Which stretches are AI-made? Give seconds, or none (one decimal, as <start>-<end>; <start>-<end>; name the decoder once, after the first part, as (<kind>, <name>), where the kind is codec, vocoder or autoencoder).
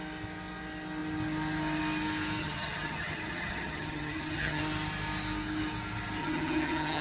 2.4-4.6 (vocoder, HiFi-GAN); 6.2-7.0